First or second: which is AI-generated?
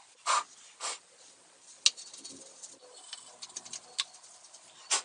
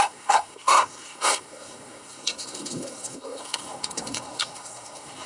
second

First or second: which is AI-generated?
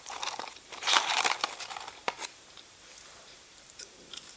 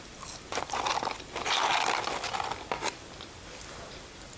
first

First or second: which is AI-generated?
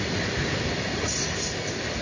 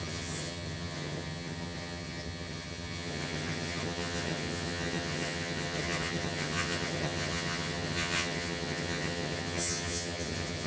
second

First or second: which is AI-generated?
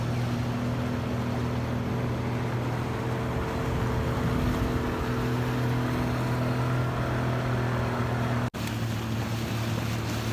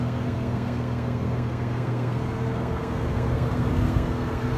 second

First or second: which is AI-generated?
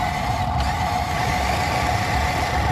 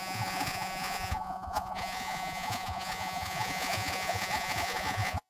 second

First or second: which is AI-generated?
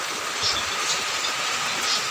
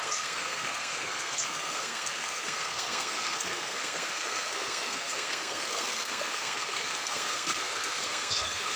second